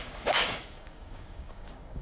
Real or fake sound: fake